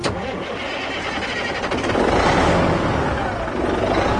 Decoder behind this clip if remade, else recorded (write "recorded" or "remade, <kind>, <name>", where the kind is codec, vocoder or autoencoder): recorded